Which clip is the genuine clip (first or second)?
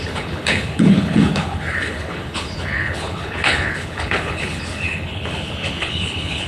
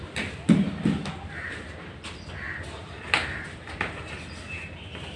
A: second